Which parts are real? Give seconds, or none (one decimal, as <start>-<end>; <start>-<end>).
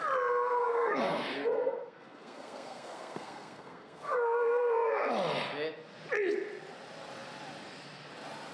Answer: 0.0-0.6; 5.1-8.5